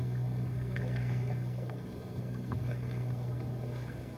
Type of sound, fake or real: fake